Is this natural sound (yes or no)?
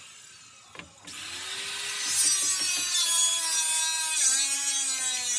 yes